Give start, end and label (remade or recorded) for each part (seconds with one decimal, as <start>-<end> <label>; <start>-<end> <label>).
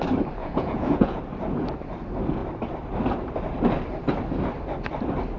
0.0-0.4 recorded; 0.4-1.2 remade; 1.2-5.4 recorded